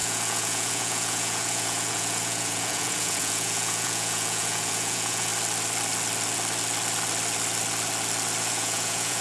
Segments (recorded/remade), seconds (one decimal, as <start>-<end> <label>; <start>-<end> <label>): 0.0-5.3 remade; 5.3-8.4 recorded; 8.4-9.2 remade